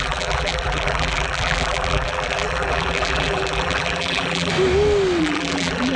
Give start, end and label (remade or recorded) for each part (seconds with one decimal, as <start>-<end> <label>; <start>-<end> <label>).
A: 0.0-4.5 remade; 4.5-5.2 recorded; 5.2-6.0 remade

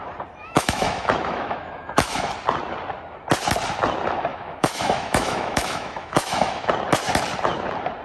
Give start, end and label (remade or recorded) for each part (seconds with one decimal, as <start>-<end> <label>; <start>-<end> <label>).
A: 0.0-0.4 recorded; 0.4-2.3 remade; 2.3-4.3 recorded; 4.3-6.7 remade; 6.7-8.0 recorded

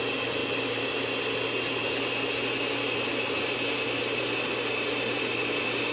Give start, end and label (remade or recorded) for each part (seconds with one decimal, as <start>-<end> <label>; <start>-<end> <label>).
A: 0.0-0.4 recorded; 0.4-0.9 remade; 0.9-5.9 recorded